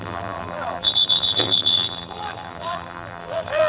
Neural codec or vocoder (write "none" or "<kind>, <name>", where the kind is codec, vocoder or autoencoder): vocoder, BigVGAN v2